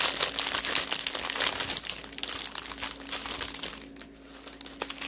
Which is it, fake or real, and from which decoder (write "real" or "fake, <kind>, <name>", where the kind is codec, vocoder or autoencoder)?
real